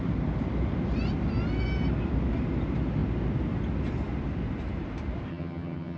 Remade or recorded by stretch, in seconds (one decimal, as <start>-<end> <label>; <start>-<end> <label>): 0.0-5.3 recorded; 5.3-6.0 remade

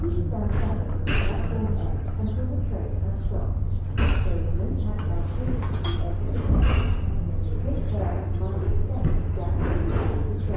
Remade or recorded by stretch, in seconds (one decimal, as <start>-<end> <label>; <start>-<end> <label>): 0.0-10.6 recorded

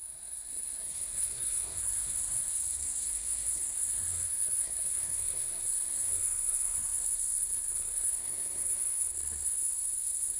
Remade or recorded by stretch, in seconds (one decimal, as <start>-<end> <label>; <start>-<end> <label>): 0.0-10.4 remade

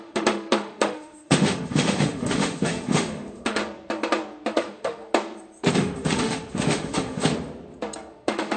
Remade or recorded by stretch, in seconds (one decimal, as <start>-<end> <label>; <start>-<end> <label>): 0.0-3.6 remade; 3.6-4.5 recorded; 4.5-5.0 remade; 5.0-5.7 recorded; 5.7-7.3 remade; 7.3-8.1 recorded; 8.1-8.6 remade

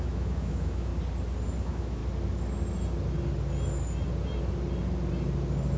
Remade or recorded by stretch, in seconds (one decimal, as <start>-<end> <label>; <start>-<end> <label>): 0.0-0.9 remade; 0.9-1.6 recorded; 1.6-2.0 remade; 2.0-5.8 recorded